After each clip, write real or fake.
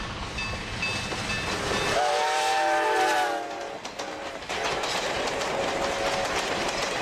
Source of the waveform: real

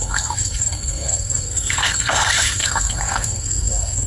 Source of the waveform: fake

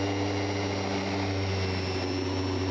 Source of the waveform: real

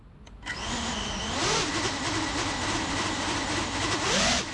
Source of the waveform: real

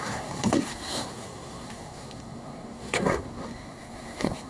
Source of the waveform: fake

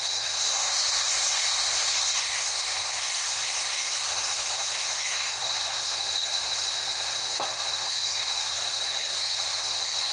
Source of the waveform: fake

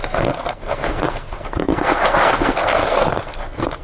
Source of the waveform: fake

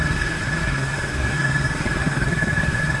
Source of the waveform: fake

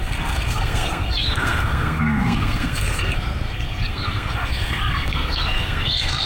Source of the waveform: fake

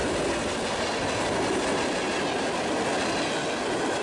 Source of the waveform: real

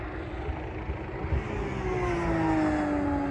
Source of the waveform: real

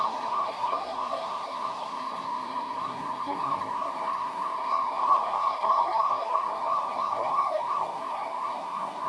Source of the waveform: fake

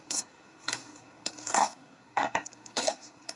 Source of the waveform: fake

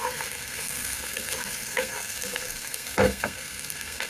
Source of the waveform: fake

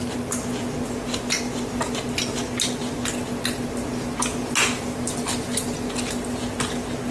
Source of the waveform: real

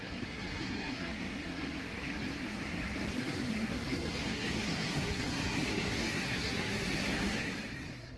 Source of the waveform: fake